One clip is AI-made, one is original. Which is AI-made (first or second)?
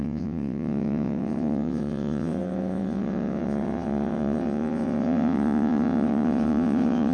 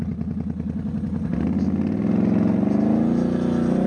first